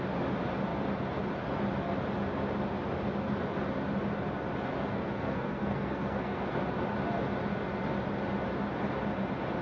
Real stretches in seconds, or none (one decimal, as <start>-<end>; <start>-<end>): 0.0-4.9; 6.6-9.6